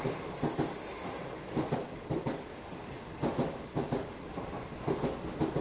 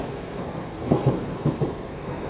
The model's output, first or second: second